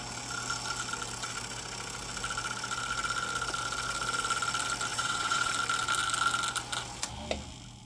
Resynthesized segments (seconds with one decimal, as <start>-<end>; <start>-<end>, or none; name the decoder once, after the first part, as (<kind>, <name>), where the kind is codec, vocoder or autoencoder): 4.9-5.5 (vocoder, WaveNeXt)